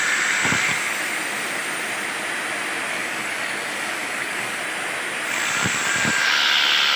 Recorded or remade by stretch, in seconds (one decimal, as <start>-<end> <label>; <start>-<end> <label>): 0.0-2.9 recorded; 2.9-4.6 remade; 4.6-7.0 recorded

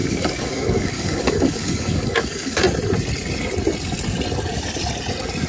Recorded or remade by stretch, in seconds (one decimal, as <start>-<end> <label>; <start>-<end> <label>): 0.0-2.6 remade; 2.6-5.5 recorded

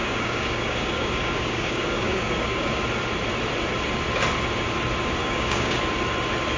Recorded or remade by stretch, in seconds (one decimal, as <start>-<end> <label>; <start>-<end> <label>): 0.0-2.8 remade; 2.8-5.2 recorded; 5.2-5.8 remade; 5.8-6.6 recorded

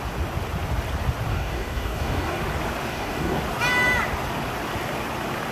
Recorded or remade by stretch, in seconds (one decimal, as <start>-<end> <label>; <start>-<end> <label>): 0.0-1.3 recorded; 1.3-2.4 remade; 2.4-2.9 recorded; 2.9-3.4 remade; 3.4-5.5 recorded